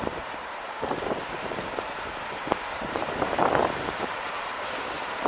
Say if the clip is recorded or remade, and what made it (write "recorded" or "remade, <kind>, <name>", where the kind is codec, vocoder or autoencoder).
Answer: remade, vocoder, BigVGAN v2